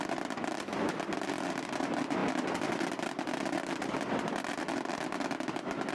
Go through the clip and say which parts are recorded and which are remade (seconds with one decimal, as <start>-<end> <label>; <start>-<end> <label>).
0.0-5.9 recorded